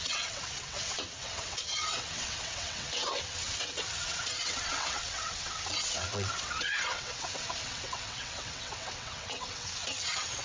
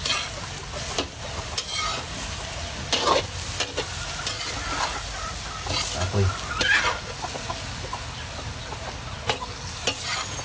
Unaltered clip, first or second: second